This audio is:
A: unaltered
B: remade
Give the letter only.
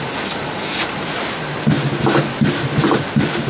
A